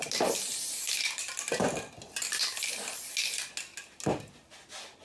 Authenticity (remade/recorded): recorded